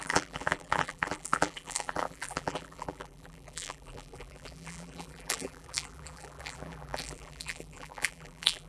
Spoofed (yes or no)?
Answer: yes